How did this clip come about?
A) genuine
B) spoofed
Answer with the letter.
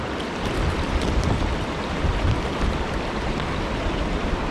B